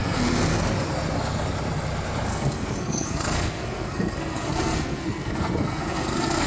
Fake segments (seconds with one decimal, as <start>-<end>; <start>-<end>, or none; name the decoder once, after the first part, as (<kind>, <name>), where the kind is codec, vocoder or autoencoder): 0.0-0.6 (codec, SNAC); 2.3-6.5